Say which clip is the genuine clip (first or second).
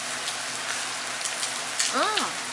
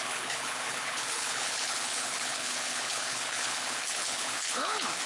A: first